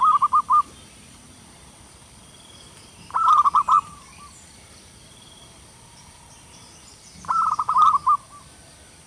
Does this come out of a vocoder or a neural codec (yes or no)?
yes